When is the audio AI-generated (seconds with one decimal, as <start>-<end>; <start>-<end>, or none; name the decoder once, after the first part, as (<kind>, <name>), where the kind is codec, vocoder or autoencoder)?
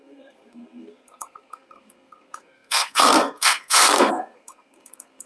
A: 0.0-5.3 (codec, SNAC)